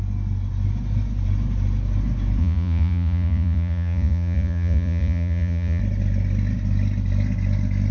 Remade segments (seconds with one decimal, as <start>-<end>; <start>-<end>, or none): 2.4-5.8